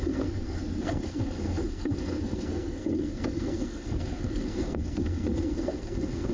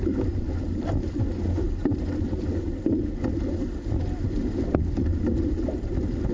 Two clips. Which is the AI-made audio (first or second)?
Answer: first